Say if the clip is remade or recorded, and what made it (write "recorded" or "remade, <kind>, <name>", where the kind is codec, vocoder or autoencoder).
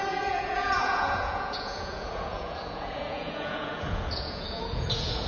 remade, vocoder, Vocos